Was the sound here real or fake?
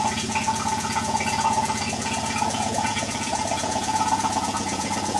fake